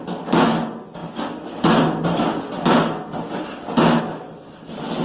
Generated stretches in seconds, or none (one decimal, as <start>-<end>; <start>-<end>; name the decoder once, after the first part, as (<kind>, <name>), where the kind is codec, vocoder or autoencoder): none